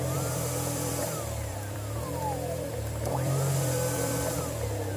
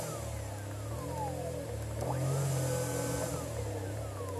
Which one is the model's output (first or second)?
first